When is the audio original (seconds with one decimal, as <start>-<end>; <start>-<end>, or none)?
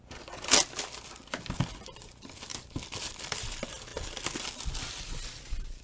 0.0-5.8